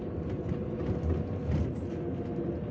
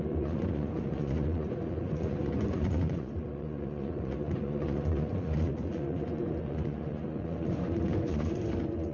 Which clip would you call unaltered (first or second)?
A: first